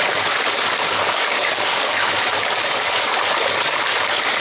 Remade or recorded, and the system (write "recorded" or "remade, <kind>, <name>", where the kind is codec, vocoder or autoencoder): remade, codec, DAC